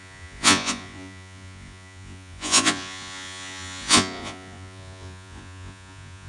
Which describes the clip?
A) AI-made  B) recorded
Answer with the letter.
A